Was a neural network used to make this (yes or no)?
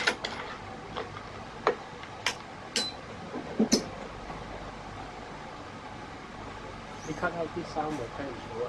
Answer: no